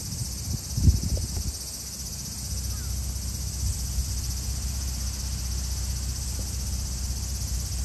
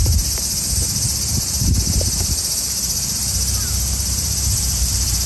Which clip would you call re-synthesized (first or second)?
second